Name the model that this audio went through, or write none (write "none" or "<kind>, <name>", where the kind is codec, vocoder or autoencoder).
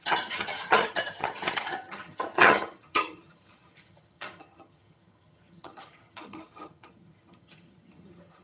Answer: vocoder, HiFi-GAN